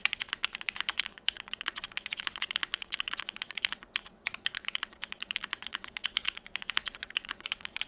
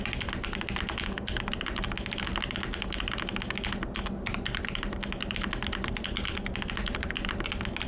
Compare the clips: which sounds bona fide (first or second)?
second